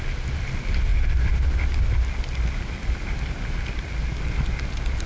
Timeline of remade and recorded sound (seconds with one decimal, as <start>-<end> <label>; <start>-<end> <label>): 0.0-5.1 recorded